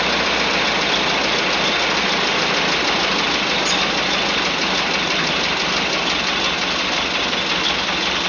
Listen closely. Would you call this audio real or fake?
real